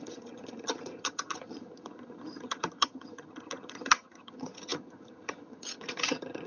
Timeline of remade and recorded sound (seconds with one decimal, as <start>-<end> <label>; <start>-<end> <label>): 0.0-6.5 remade